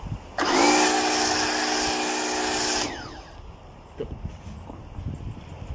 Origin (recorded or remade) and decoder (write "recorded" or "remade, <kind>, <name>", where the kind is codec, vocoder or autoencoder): recorded